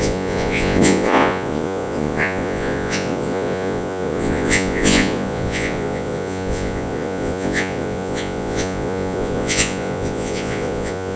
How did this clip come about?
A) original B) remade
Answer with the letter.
B